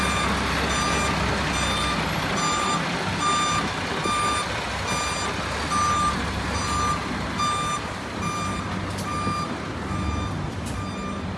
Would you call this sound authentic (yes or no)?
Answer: yes